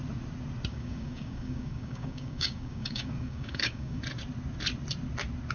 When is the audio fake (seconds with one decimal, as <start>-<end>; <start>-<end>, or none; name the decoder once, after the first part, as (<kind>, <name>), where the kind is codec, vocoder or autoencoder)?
0.7-4.0 (codec, DAC)